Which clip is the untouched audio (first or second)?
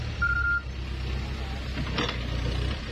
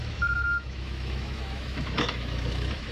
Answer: first